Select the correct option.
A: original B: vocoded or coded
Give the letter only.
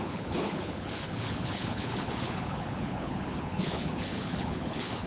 B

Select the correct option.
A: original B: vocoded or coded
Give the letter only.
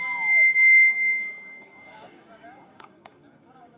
B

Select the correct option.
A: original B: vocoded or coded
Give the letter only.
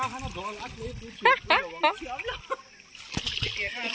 A